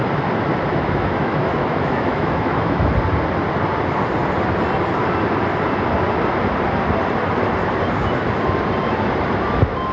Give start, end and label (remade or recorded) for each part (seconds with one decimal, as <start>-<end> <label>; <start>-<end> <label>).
0.0-0.7 recorded; 0.7-2.9 remade; 2.9-9.9 recorded